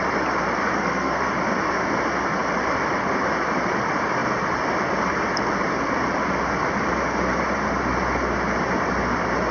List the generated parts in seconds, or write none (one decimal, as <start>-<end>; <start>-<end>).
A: 0.7-1.3